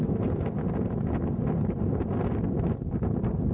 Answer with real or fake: real